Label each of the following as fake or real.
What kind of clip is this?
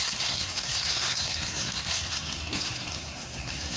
fake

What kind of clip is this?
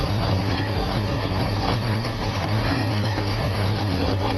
fake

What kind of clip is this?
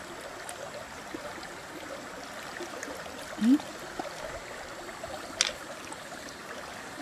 real